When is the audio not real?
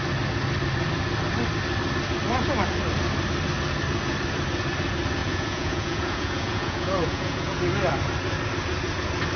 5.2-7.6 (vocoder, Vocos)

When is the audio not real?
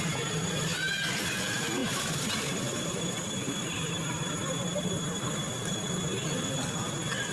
1.8-5.9 (vocoder, BigVGAN v2)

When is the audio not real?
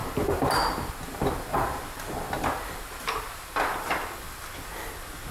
0.0-3.2 (vocoder, BigVGAN v2)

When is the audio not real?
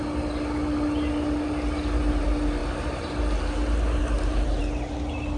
4.0-4.6 (vocoder, BigVGAN v2)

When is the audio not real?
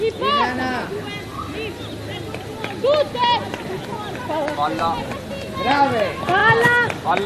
none